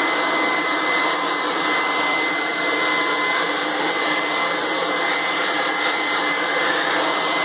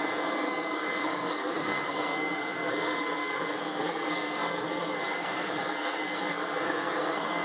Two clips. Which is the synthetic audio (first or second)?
second